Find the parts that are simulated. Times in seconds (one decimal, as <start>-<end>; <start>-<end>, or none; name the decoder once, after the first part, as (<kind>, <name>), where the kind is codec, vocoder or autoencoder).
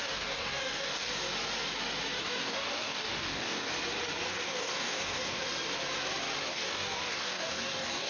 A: 0.0-1.1 (codec, DAC); 2.2-3.7; 4.3-5.4; 6.5-8.1